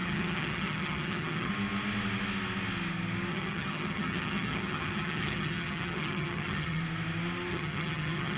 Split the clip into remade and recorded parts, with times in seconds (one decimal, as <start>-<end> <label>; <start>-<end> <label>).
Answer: 0.0-1.5 remade; 1.5-3.3 recorded; 3.3-6.8 remade; 6.8-7.5 recorded; 7.5-8.4 remade